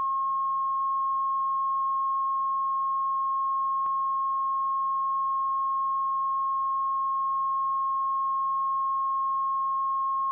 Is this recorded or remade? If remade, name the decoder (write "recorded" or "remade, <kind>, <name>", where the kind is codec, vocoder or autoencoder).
recorded